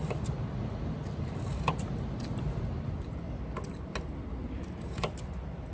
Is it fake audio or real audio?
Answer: real